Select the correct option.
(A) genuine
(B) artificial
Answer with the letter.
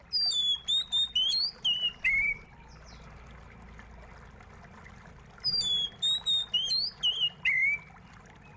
A